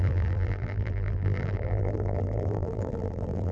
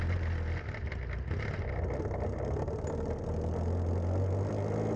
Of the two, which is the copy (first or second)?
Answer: first